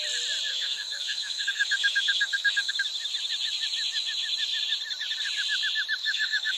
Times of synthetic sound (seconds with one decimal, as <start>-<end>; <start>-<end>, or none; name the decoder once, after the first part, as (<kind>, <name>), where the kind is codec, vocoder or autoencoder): 0.5-2.7 (codec, SNAC); 6.0-6.6